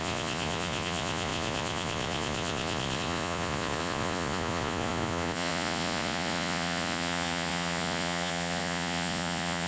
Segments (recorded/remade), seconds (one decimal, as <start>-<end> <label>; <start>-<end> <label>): 0.0-9.7 remade